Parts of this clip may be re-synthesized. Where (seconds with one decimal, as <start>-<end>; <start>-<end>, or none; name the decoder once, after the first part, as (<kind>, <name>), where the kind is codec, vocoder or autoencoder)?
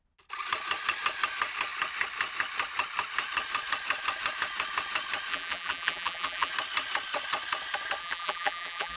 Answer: 5.3-6.5 (vocoder, BigVGAN v2); 8.0-9.0